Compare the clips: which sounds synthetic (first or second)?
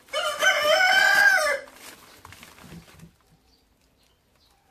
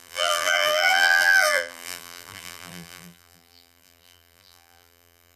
second